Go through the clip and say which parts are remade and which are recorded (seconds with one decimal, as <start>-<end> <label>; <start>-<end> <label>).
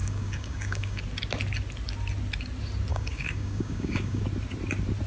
0.0-1.0 remade; 1.0-2.9 recorded; 2.9-4.2 remade; 4.2-5.1 recorded